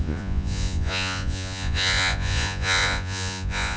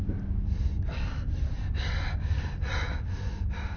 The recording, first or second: second